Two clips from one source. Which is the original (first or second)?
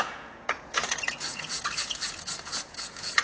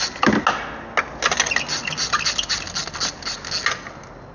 second